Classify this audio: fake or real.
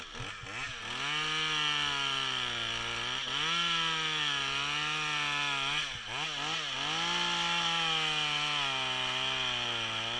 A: real